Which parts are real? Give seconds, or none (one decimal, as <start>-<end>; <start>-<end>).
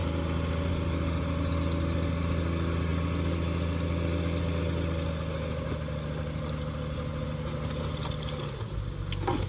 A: 0.0-9.5